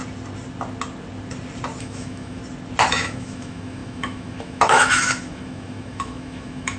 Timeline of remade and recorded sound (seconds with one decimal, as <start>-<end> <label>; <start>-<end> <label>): 0.0-1.8 recorded; 1.8-2.4 remade; 2.4-2.9 recorded; 2.9-6.8 remade